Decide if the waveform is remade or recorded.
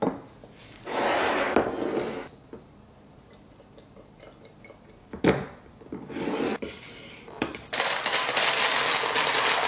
recorded